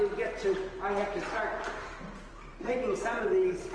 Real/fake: fake